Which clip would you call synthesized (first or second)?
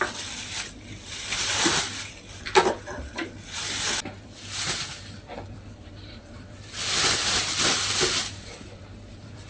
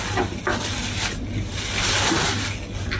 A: first